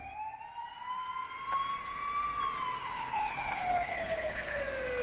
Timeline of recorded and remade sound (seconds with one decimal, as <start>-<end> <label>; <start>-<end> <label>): 0.0-2.8 recorded; 2.8-4.6 remade; 4.6-5.0 recorded